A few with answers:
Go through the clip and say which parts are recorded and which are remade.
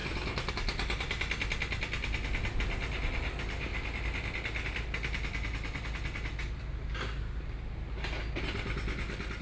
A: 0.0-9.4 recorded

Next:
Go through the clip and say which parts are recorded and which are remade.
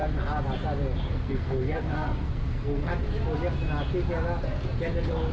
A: 0.0-1.0 recorded; 1.0-2.9 remade; 2.9-5.3 recorded